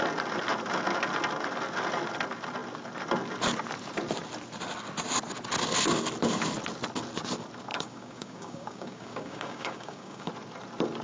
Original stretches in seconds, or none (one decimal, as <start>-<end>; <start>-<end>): 0.0-7.7; 10.3-11.0